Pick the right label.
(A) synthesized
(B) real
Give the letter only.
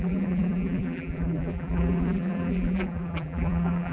A